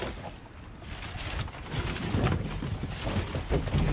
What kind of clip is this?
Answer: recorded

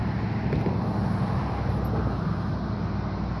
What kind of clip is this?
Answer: recorded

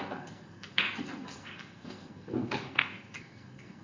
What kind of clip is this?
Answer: remade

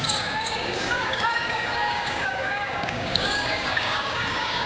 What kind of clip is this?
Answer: remade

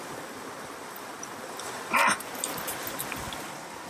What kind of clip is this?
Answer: remade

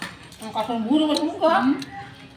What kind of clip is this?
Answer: recorded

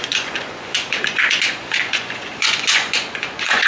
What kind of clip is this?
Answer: remade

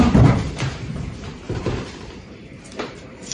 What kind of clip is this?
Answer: remade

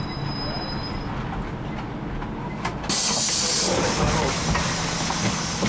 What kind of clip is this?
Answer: recorded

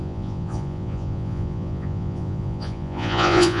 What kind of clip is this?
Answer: remade